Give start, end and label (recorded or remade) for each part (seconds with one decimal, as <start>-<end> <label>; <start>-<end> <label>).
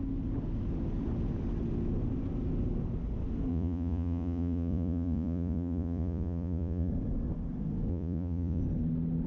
0.0-3.5 recorded; 3.5-6.9 remade; 6.9-7.9 recorded; 7.9-8.6 remade; 8.6-9.3 recorded